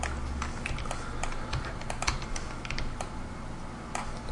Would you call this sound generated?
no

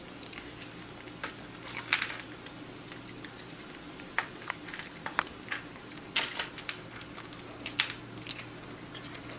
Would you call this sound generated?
no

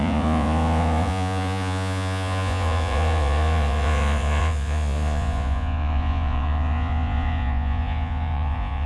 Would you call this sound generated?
yes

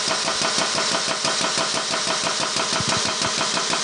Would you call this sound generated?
yes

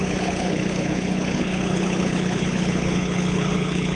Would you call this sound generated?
yes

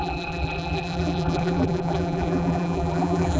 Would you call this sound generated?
yes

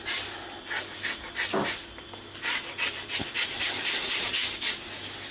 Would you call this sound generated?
no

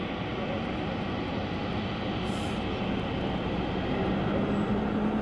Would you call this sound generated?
no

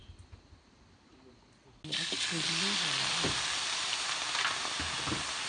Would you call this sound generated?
no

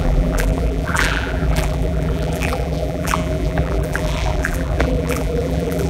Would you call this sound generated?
yes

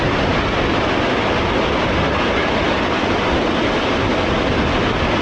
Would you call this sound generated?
no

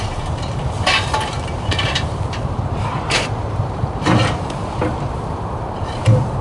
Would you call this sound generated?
yes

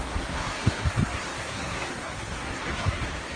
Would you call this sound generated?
yes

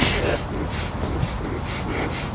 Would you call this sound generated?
no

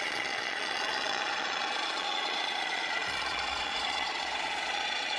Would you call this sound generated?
yes